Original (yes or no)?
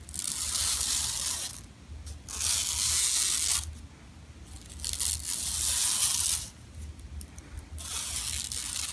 yes